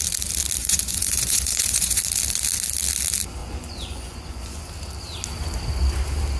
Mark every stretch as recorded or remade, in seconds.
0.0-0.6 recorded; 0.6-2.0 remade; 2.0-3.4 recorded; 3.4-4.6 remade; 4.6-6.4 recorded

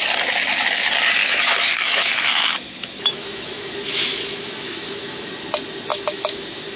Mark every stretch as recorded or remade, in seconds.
0.0-1.2 recorded; 1.2-5.3 remade; 5.3-5.9 recorded; 5.9-6.8 remade

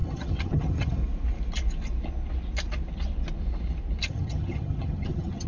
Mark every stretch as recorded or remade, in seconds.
0.0-1.0 remade; 1.0-4.1 recorded; 4.1-5.5 remade

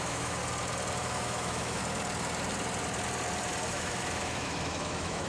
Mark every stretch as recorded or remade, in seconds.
0.0-0.4 remade; 0.4-1.0 recorded; 1.0-1.8 remade; 1.8-3.7 recorded; 3.7-5.3 remade